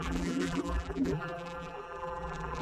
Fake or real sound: fake